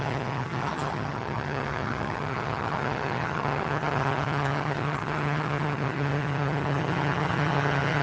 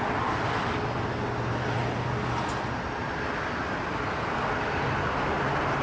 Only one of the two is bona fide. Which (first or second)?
second